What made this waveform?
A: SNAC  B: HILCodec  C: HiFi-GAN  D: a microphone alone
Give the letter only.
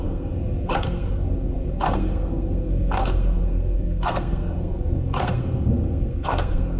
A